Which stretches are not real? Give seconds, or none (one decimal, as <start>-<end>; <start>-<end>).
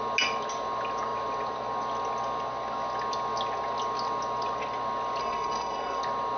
5.2-6.0